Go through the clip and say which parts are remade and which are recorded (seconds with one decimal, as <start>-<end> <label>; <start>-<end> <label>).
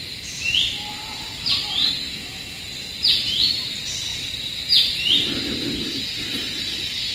0.0-2.0 recorded; 2.0-2.6 remade; 2.6-7.1 recorded